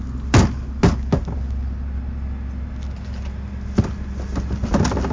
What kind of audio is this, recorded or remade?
recorded